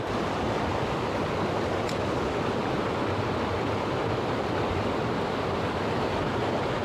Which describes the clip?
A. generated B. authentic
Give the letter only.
B